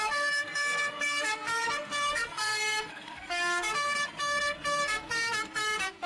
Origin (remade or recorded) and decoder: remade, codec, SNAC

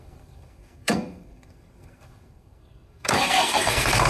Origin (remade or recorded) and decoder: remade, codec, SNAC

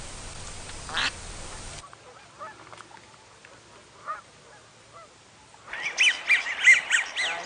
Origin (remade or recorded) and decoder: recorded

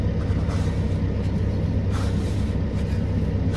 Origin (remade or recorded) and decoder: recorded